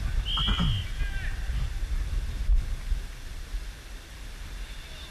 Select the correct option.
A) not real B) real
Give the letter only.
B